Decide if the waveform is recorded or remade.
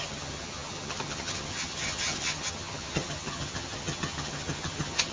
remade